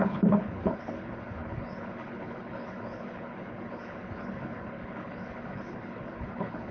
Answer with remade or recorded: remade